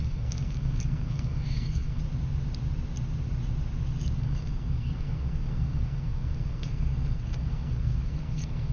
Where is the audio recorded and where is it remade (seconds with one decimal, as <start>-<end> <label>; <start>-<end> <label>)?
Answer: 0.0-2.0 remade; 2.0-4.2 recorded; 4.2-8.7 remade